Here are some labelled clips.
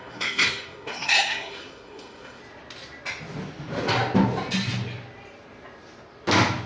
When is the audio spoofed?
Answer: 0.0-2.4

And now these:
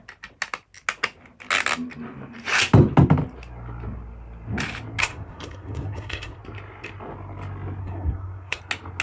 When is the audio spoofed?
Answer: 5.0-6.4; 7.8-8.6